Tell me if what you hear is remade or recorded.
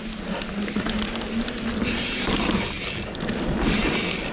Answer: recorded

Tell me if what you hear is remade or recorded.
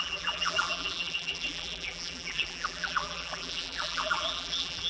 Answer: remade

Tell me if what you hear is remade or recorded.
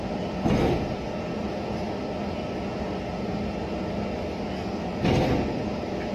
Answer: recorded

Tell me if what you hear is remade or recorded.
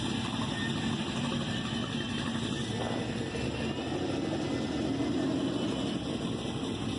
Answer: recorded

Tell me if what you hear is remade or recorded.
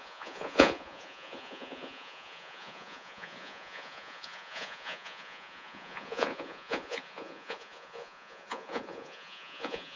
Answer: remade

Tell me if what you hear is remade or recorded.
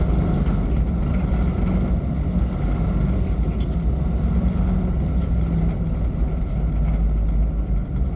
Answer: recorded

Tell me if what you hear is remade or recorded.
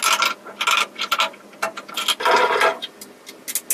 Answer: recorded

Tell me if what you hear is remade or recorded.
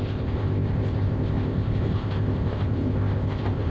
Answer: remade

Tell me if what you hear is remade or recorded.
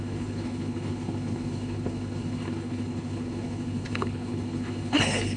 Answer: remade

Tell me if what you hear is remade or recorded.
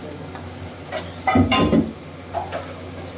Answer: recorded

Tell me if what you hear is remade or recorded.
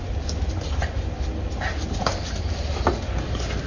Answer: recorded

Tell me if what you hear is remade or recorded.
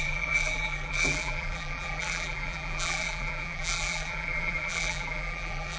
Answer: remade